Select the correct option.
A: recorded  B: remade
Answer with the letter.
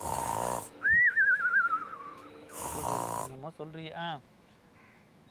B